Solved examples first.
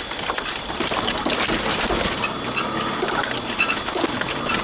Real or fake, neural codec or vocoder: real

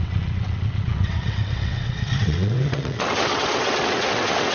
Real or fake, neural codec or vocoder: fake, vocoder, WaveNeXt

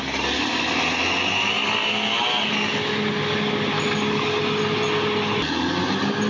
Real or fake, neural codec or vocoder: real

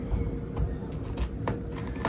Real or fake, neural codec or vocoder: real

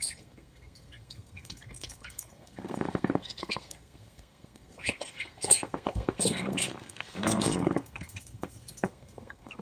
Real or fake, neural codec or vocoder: fake, codec, SNAC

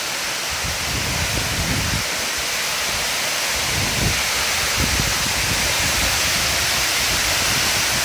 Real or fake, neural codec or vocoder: real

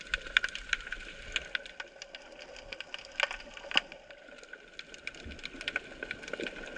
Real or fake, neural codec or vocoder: real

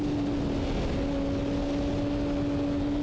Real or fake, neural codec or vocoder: real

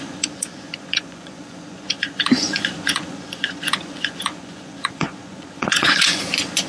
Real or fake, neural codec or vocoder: fake, vocoder, Vocos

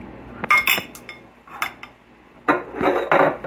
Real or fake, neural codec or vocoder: real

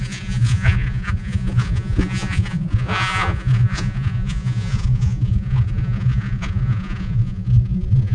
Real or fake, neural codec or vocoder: fake, vocoder, Vocos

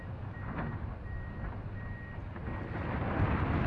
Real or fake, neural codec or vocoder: real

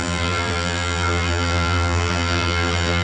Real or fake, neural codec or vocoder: fake, vocoder, BigVGAN v2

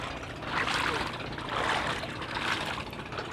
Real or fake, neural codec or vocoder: real